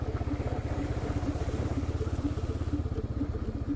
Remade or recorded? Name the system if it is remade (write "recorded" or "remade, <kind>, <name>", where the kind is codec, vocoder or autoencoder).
recorded